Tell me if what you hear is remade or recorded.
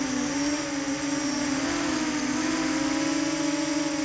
recorded